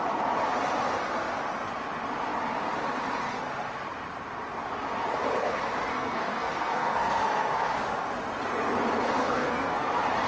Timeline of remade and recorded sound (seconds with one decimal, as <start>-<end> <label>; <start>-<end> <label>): 0.0-5.9 recorded; 5.9-7.7 remade; 7.7-9.2 recorded; 9.2-9.9 remade; 9.9-10.3 recorded